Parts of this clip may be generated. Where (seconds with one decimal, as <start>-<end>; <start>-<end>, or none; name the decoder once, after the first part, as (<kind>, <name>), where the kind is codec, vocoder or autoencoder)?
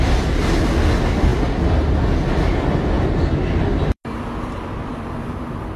none